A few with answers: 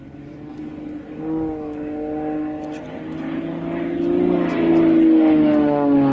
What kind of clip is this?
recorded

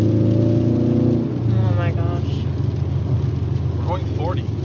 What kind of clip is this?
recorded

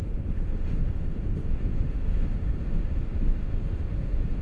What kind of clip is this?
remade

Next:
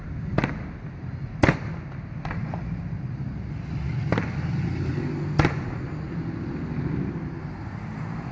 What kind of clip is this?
remade